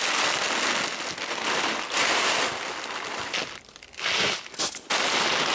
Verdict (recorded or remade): recorded